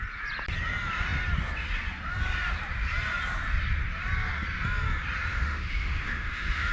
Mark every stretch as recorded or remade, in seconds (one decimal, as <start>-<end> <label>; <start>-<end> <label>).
0.0-5.3 recorded; 5.3-6.7 remade